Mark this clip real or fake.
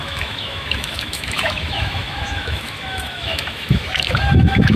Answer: fake